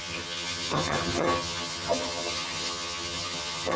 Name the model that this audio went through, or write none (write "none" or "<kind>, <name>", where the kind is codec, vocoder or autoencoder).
vocoder, HiFi-GAN